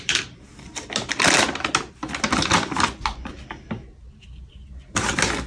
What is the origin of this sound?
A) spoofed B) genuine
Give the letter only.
B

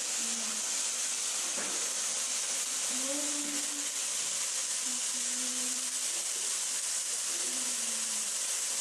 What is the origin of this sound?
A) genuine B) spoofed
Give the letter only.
A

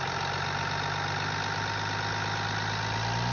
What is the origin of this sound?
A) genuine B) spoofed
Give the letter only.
A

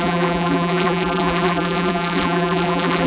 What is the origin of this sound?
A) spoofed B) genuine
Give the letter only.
A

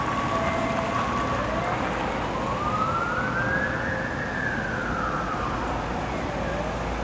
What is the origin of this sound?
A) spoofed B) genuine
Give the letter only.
B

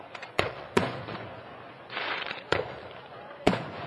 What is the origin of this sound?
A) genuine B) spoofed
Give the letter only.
B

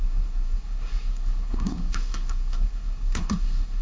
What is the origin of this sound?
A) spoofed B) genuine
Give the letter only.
A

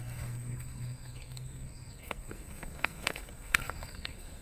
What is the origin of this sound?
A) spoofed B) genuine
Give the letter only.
A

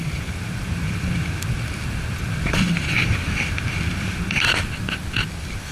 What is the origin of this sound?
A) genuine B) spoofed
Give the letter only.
B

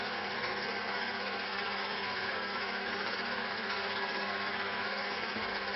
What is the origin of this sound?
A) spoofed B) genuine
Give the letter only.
A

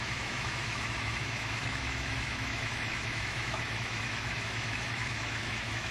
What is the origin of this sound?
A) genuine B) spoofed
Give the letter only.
B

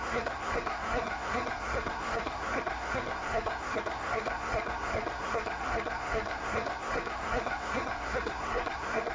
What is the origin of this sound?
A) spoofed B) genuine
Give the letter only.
A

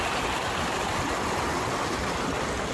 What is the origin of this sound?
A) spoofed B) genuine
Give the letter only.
B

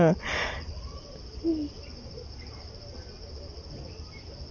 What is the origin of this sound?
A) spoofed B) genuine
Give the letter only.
B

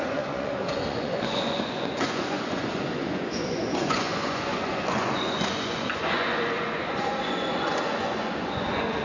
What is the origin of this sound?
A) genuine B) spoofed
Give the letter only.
B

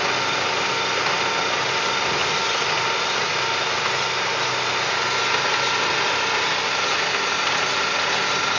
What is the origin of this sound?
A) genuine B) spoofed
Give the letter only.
A